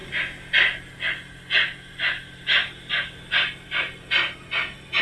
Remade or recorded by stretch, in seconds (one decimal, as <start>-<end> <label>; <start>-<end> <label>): 0.0-5.0 recorded